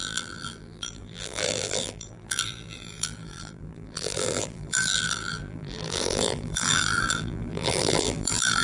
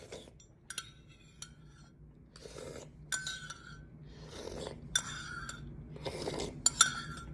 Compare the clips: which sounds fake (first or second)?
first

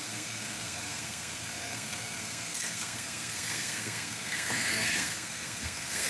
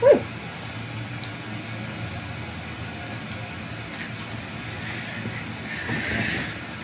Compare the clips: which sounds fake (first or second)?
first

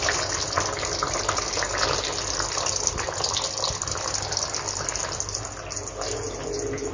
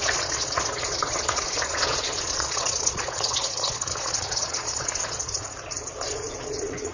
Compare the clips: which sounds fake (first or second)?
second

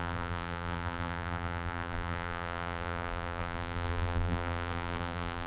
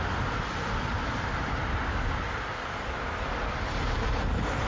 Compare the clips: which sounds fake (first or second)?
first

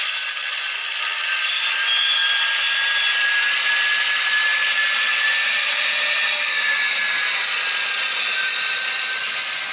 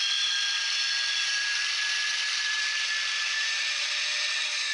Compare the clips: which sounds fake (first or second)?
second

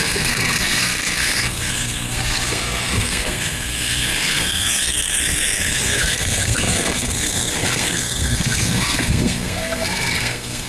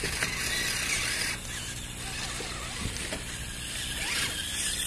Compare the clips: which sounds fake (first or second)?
first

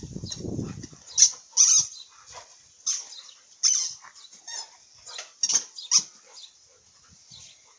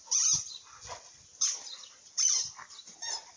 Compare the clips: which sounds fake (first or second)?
second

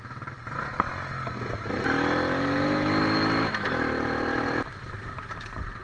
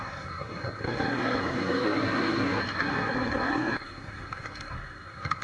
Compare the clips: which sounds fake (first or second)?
second